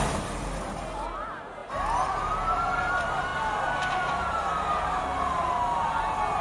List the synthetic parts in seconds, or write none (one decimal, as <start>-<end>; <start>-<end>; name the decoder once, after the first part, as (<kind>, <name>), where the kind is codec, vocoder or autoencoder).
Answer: none